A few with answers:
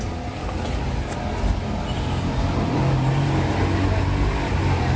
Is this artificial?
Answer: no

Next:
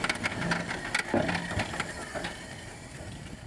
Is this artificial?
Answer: no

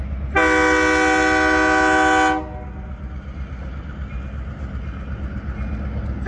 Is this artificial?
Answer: no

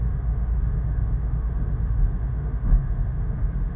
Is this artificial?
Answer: yes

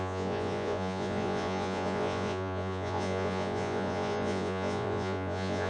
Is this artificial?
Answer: yes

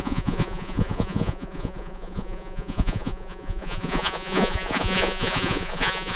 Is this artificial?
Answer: yes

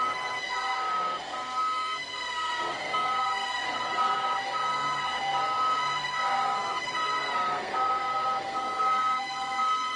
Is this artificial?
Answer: yes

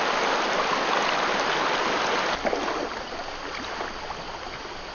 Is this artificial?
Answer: no